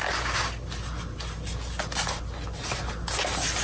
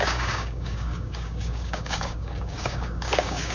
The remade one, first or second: second